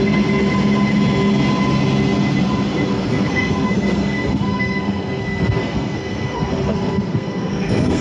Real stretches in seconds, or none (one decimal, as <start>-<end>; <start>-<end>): 0.0-2.9